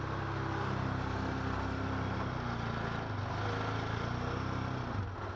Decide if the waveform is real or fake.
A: real